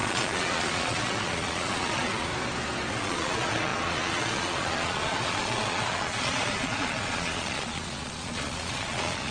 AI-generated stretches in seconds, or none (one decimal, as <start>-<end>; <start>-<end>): 0.0-2.3; 2.9-9.3